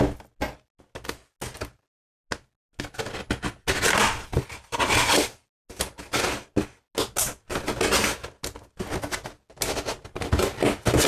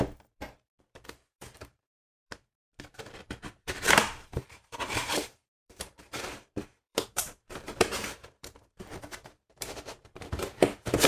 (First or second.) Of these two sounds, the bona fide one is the first